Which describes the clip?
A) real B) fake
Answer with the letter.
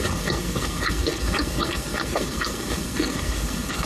B